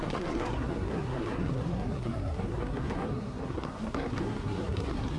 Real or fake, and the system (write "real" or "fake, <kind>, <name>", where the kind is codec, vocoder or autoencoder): fake, codec, SNAC